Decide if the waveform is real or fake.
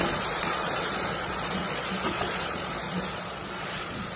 fake